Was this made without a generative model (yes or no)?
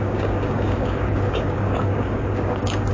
no